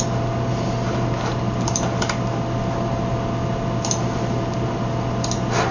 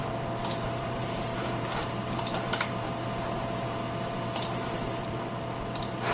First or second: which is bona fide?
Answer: first